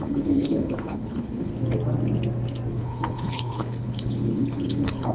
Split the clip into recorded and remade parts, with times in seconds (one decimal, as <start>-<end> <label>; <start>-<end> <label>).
0.0-1.5 remade; 1.5-2.7 recorded; 2.7-5.1 remade